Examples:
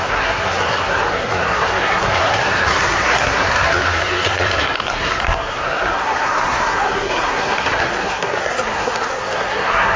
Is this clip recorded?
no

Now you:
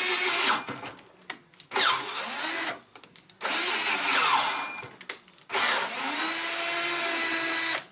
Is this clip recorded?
yes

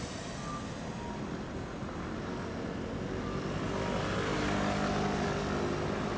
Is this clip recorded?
yes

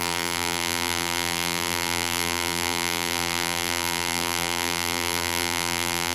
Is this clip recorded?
no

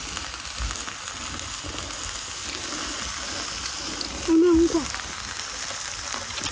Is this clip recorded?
yes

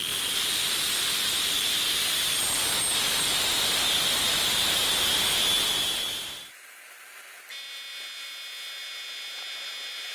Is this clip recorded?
yes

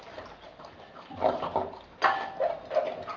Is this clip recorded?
yes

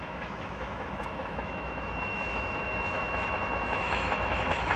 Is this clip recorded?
no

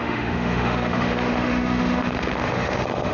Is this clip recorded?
no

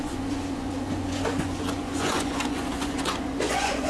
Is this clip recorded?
no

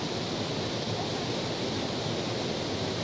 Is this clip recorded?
yes